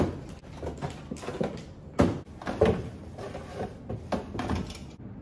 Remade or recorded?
recorded